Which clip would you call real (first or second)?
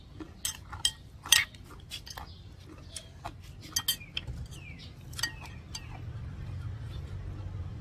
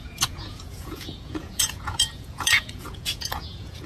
first